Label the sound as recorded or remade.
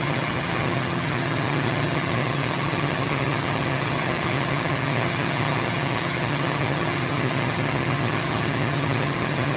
remade